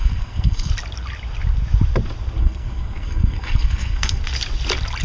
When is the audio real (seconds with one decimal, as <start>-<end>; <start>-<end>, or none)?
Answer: 0.7-2.4; 4.2-5.0